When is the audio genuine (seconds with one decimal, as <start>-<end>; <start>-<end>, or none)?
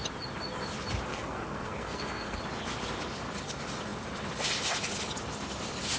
0.0-1.1; 2.4-6.0